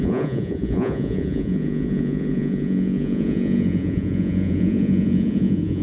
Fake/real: fake